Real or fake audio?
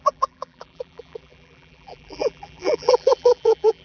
fake